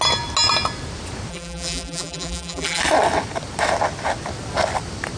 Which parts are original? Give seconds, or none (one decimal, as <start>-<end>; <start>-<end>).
0.0-1.3; 2.8-5.2